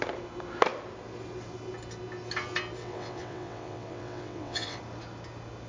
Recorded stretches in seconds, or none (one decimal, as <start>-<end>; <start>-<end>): 0.0-2.8; 4.8-5.7